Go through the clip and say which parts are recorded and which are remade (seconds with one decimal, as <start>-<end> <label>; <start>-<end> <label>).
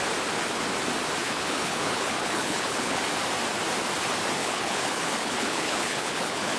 0.0-1.2 recorded; 1.2-3.0 remade; 3.0-4.4 recorded; 4.4-6.6 remade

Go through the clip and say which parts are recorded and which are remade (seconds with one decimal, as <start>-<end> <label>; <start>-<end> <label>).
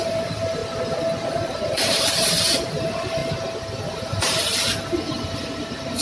0.0-0.6 remade; 0.6-1.2 recorded; 1.2-3.2 remade; 3.2-3.9 recorded; 3.9-4.5 remade; 4.5-5.1 recorded; 5.1-6.0 remade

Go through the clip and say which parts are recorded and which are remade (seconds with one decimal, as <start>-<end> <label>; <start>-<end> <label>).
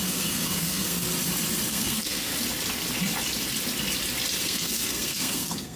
0.0-1.1 remade; 1.1-1.7 recorded; 1.7-2.3 remade; 2.3-4.4 recorded; 4.4-5.8 remade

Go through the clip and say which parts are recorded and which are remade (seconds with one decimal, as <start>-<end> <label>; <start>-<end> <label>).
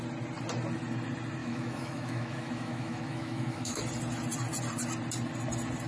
0.0-1.4 recorded; 1.4-3.8 remade; 3.8-5.9 recorded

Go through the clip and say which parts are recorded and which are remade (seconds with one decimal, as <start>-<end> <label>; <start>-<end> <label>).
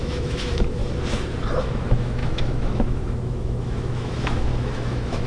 0.0-0.8 remade; 0.8-1.6 recorded; 1.6-5.3 remade